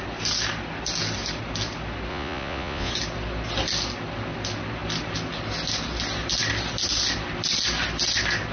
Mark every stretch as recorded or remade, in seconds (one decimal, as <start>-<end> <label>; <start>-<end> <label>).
0.0-2.1 recorded; 2.1-2.9 remade; 2.9-8.5 recorded